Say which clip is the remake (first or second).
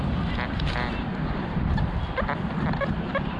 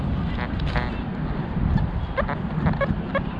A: first